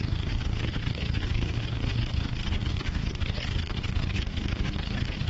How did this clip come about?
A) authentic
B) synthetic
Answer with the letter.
B